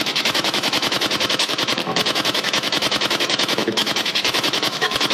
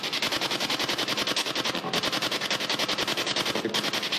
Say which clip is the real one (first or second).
second